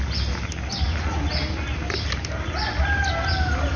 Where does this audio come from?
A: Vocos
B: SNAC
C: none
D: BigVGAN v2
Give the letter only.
C